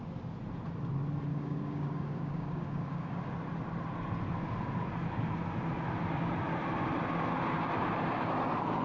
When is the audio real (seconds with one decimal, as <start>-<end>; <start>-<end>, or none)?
0.0-1.3; 3.2-8.8